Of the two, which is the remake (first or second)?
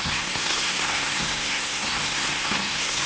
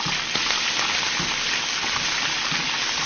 first